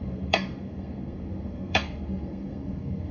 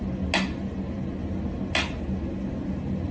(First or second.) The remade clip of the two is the first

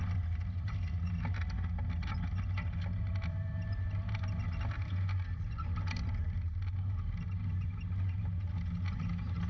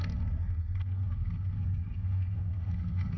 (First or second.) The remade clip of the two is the second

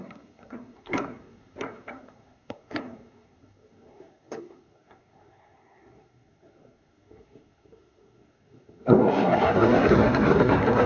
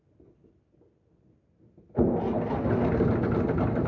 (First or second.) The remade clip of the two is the first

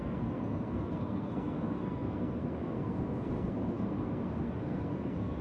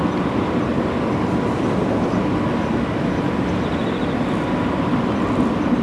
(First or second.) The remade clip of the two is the first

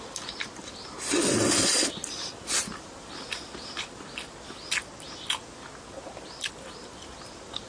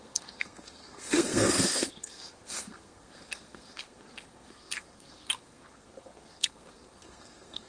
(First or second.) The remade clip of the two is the second